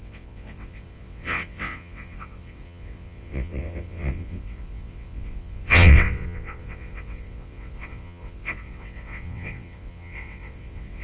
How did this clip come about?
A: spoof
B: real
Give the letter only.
A